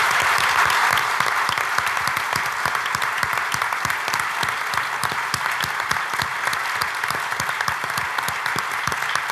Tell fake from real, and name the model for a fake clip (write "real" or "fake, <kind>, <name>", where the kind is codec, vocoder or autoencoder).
real